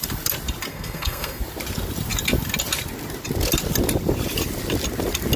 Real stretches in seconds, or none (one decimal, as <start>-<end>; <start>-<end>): 0.0-0.7; 1.4-5.4